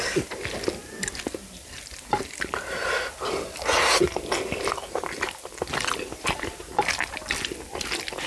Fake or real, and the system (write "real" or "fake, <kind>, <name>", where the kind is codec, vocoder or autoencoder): real